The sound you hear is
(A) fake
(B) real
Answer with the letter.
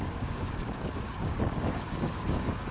A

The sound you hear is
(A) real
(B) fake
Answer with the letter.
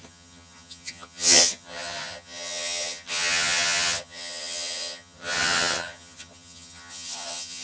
B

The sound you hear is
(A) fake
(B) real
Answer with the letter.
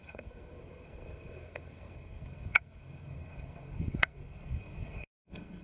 A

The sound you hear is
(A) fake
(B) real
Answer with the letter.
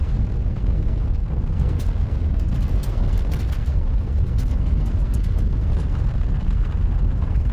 A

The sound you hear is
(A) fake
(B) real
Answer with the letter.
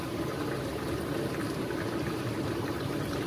B